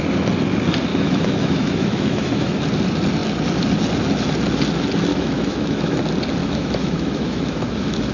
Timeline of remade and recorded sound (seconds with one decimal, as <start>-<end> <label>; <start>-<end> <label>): 0.0-0.9 recorded; 0.9-2.6 remade; 2.6-5.1 recorded; 5.1-6.0 remade; 6.0-6.4 recorded; 6.4-8.1 remade